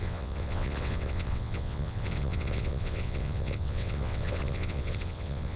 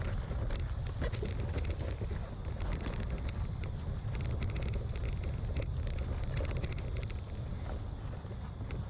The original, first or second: second